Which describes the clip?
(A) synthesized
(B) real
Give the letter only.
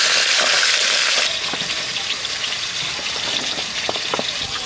A